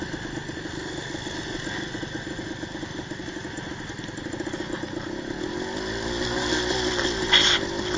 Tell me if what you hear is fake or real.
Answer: real